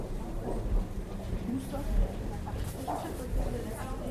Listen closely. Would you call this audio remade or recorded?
remade